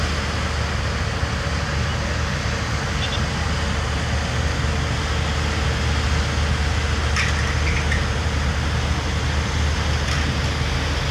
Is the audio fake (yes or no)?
no